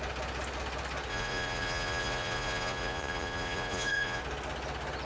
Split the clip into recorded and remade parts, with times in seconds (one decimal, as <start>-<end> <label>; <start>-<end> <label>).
0.0-1.1 recorded; 1.1-4.2 remade; 4.2-5.1 recorded